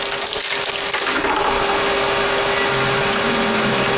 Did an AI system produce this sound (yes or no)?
no